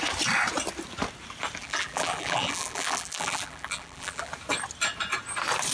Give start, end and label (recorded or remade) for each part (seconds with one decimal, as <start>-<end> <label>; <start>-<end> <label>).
0.0-1.6 recorded; 1.6-4.3 remade; 4.3-5.7 recorded